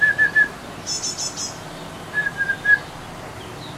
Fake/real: real